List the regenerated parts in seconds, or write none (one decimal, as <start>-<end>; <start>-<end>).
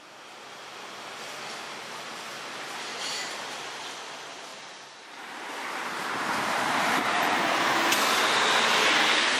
2.9-3.5; 4.5-7.9